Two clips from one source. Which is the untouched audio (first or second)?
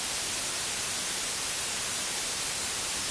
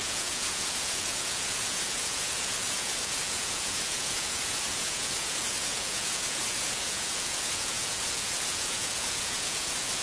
first